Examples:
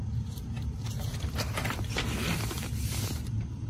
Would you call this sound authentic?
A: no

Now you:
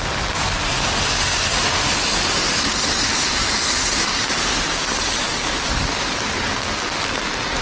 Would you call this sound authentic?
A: yes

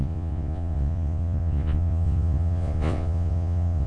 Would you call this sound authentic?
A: no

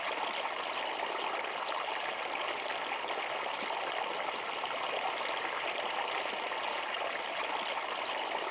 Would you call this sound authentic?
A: yes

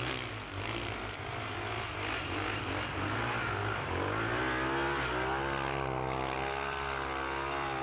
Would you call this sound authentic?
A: yes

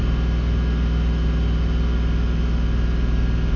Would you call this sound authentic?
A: yes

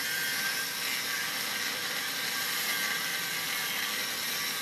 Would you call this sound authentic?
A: yes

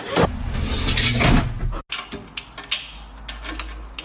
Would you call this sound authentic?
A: yes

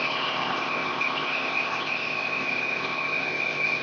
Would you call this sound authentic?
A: no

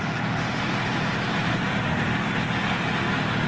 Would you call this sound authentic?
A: no